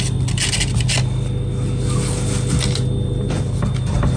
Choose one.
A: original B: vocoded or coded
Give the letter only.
A